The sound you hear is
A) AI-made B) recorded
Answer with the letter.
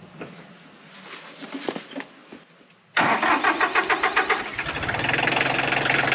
B